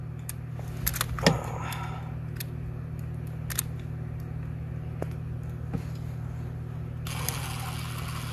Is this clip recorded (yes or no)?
yes